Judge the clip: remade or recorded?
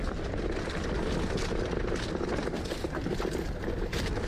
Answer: recorded